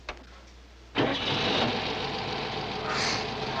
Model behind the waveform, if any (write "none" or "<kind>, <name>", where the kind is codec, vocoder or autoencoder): none